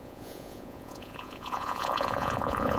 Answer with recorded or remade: remade